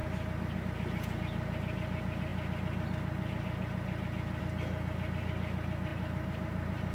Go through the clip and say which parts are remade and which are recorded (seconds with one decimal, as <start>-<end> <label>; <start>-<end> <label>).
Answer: 0.0-5.9 recorded; 5.9-6.9 remade